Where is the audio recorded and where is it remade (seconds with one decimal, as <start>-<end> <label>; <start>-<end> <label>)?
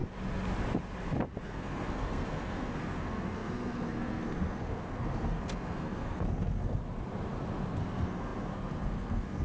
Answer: 0.0-1.4 recorded; 1.4-6.8 remade; 6.8-7.8 recorded; 7.8-9.4 remade